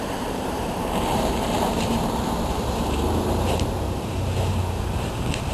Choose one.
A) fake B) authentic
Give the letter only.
A